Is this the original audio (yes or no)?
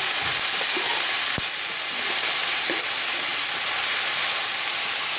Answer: yes